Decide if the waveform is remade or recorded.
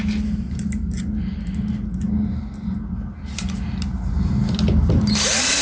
recorded